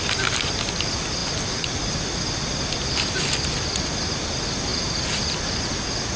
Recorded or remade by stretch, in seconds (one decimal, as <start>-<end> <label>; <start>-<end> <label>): 0.0-6.2 recorded